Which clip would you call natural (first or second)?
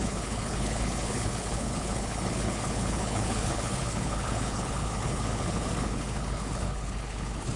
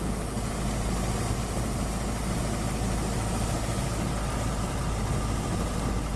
second